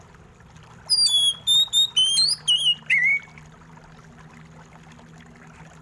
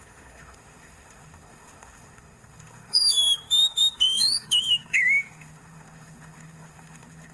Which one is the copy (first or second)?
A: second